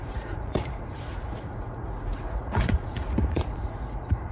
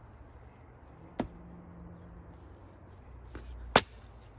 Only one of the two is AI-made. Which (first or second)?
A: first